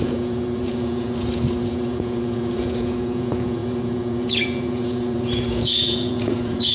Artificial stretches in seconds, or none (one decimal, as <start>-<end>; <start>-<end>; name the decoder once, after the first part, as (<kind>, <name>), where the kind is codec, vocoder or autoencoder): 0.0-6.7 (vocoder, Vocos)